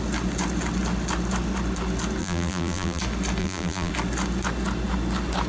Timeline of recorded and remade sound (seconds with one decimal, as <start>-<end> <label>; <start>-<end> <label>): 0.0-2.2 recorded; 2.2-3.0 remade; 3.0-3.4 recorded; 3.4-3.9 remade; 3.9-5.5 recorded